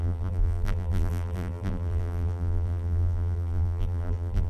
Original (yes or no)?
no